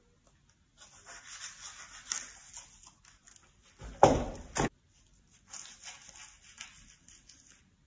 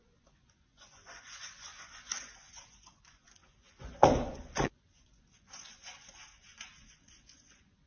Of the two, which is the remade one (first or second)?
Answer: second